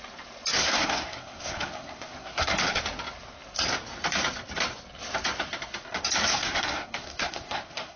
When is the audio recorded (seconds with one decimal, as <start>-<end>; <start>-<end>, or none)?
0.0-0.6; 2.8-6.3